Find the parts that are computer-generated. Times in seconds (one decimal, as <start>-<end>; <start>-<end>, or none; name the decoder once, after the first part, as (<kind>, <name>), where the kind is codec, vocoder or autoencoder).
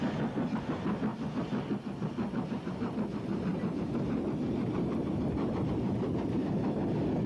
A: 3.5-6.8 (vocoder, BigVGAN v2)